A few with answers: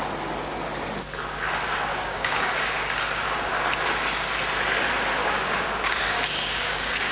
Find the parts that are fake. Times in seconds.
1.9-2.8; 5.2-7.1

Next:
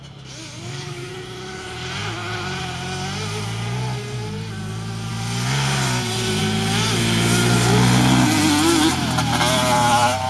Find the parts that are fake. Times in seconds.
0.4-1.1